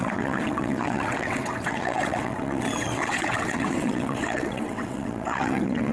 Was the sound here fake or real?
fake